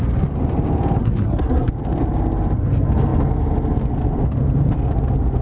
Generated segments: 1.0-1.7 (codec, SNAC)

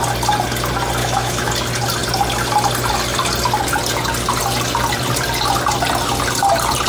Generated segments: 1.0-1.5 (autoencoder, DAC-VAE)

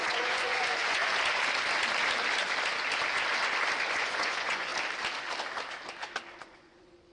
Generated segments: 0.0-1.0 (vocoder, Vocos); 3.9-4.7; 6.4-7.1